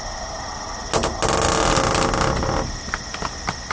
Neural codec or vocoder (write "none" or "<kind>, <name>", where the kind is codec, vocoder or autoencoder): none